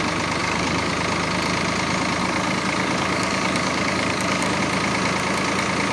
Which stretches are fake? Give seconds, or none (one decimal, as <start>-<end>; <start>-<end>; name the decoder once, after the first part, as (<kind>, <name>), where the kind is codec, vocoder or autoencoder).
0.4-0.9 (codec, DAC); 2.2-4.6